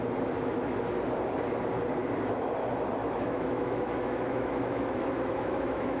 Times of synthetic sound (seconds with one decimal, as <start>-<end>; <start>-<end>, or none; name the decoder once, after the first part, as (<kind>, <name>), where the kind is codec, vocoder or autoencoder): 3.0-6.0 (autoencoder, DAC-VAE)